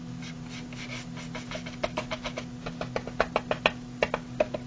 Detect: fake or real real